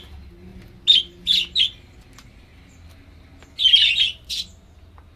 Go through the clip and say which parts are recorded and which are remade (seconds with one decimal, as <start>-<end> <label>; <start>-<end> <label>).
0.0-5.2 recorded